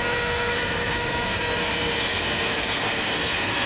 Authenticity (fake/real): fake